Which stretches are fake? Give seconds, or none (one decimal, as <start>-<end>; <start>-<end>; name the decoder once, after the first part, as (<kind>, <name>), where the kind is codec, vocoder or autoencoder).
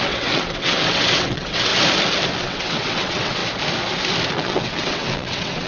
0.0-1.7 (vocoder, WaveNeXt); 2.4-3.4; 4.3-5.7